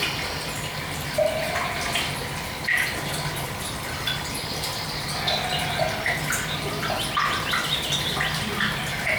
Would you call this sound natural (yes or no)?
yes